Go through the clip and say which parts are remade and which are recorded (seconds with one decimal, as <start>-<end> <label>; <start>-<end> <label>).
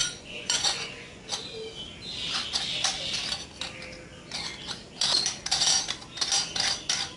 0.0-1.2 remade; 1.2-7.2 recorded